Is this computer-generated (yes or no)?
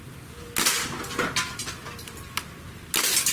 no